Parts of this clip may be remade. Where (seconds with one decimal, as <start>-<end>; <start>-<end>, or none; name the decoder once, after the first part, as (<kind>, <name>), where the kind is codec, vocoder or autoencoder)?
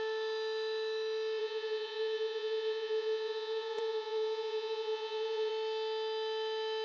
1.4-5.5 (vocoder, Vocos)